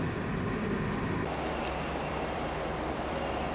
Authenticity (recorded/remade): remade